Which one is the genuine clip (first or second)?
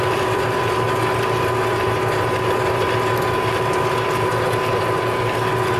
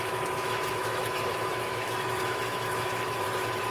first